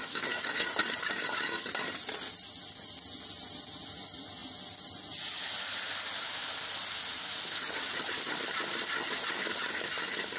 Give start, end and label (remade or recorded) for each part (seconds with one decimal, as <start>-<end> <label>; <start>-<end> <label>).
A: 0.0-10.4 recorded